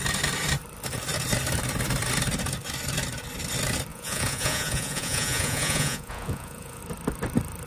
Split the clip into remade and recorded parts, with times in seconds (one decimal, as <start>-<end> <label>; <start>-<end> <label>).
0.0-3.9 recorded; 3.9-6.8 remade; 6.8-7.7 recorded